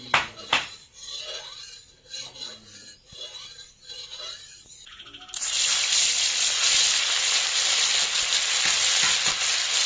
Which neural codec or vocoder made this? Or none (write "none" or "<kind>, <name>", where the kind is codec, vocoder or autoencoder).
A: none